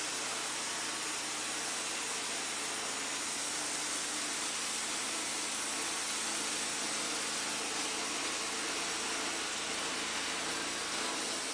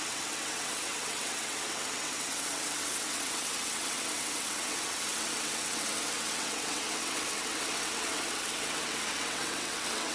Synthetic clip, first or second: second